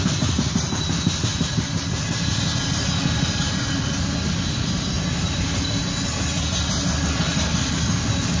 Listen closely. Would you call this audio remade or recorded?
recorded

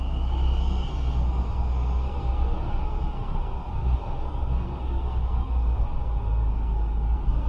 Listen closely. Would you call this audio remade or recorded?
remade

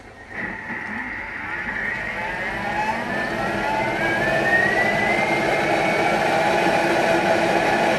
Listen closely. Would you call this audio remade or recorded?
recorded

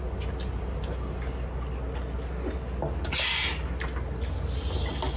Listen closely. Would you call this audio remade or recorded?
recorded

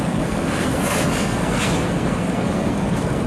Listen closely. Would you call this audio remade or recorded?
remade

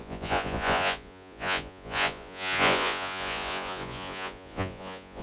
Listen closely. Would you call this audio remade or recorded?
remade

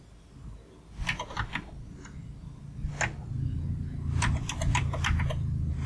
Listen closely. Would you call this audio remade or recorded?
recorded